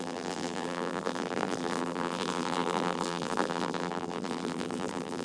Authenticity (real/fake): fake